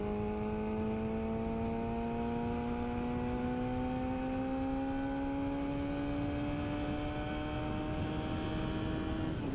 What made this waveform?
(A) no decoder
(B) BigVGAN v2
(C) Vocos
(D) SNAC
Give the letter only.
A